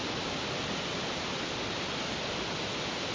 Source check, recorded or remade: recorded